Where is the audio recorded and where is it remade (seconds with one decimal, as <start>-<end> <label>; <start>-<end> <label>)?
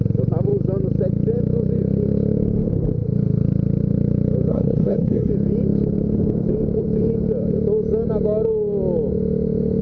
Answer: 0.0-4.5 recorded; 4.5-5.3 remade; 5.3-9.8 recorded